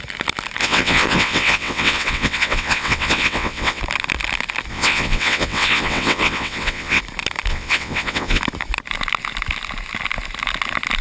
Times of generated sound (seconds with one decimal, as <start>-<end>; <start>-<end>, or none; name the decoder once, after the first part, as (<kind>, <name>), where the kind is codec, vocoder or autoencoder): 0.6-3.8 (vocoder, WaveNeXt); 4.7-7.0; 7.5-8.4